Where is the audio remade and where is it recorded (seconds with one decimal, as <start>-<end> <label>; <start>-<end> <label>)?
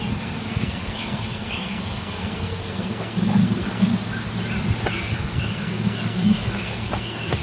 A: 0.0-3.9 remade; 3.9-4.9 recorded; 4.9-7.4 remade